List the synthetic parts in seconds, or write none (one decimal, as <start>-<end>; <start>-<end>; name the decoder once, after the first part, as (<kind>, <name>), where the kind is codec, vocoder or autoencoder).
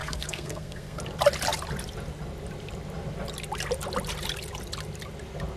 0.0-1.0 (codec, SNAC)